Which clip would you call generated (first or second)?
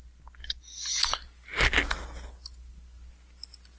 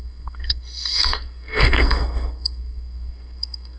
second